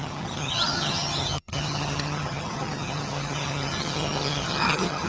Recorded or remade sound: remade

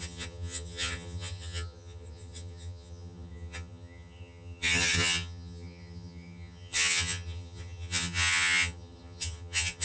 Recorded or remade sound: remade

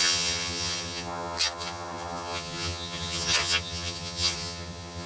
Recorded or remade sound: remade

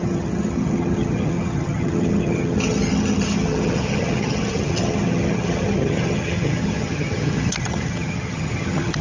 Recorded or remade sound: remade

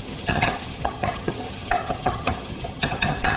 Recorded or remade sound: remade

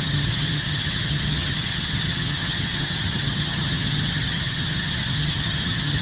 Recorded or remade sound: remade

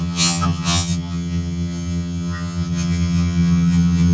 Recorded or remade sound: remade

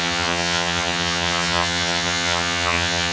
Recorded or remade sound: remade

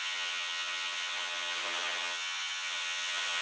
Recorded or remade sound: remade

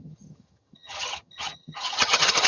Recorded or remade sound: remade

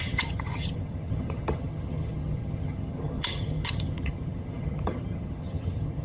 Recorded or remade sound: remade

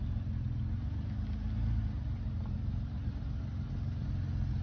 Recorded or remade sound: recorded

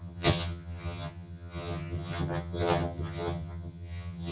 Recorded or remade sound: remade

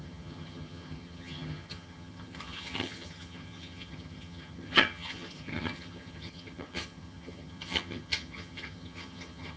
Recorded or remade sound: remade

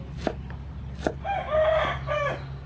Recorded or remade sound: recorded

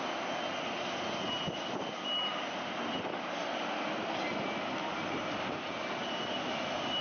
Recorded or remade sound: recorded